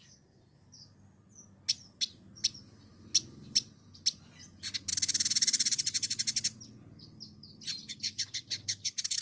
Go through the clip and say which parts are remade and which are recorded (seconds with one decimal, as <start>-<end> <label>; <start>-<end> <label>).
0.0-9.2 recorded